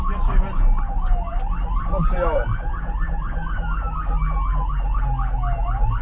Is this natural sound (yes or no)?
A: yes